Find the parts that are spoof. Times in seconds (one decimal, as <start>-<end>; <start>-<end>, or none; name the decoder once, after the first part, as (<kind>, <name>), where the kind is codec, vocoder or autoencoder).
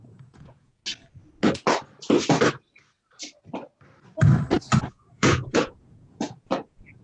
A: 0.0-0.8 (vocoder, Vocos); 4.8-7.0